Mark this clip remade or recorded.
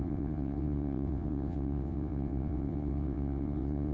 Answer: remade